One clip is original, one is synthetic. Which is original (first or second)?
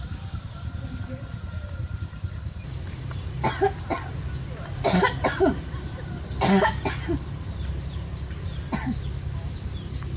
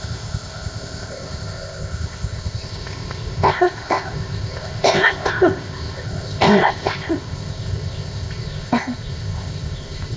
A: first